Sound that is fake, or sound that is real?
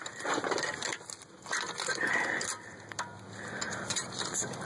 real